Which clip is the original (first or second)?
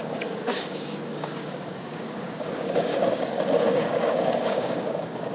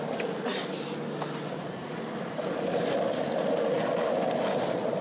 second